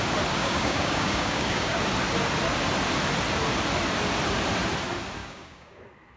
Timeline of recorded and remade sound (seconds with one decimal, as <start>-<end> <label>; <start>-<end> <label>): 0.0-0.4 recorded; 0.4-1.8 remade; 1.8-5.2 recorded; 5.2-5.8 remade; 5.8-6.2 recorded